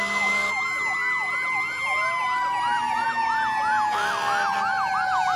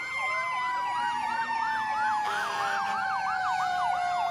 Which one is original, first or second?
first